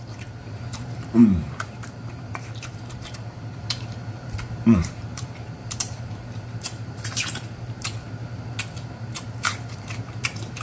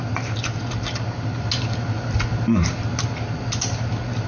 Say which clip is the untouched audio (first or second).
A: second